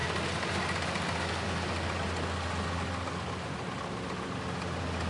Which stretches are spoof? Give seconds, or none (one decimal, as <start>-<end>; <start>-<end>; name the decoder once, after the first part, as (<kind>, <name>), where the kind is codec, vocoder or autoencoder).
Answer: none